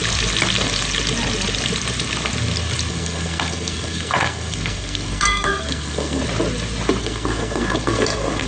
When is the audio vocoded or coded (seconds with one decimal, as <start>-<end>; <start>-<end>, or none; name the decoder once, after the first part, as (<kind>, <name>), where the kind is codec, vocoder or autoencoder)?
2.9-6.2 (codec, SNAC); 7.0-8.5